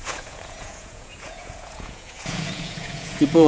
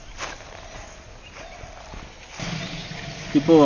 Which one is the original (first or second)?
second